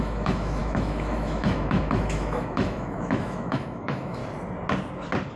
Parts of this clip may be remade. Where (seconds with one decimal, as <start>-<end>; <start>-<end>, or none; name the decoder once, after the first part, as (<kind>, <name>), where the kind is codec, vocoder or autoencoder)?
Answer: 0.0-4.2 (autoencoder, DAC-VAE)